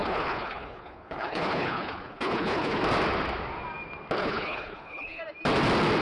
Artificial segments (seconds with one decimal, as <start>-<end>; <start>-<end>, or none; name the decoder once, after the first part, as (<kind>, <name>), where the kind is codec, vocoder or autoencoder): 0.0-2.8 (codec, HILCodec); 4.2-5.2